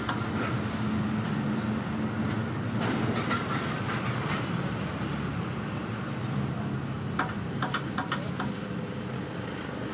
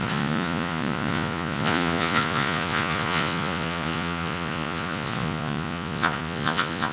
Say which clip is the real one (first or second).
first